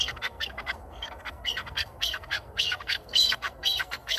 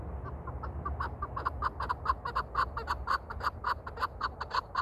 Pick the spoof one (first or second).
first